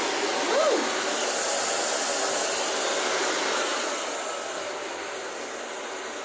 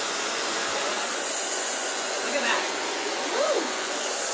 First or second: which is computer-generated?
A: second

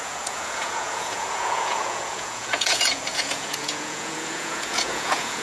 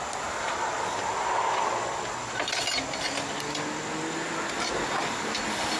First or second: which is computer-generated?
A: first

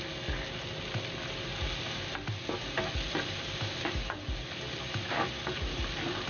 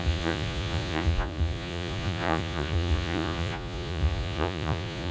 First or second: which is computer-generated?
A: second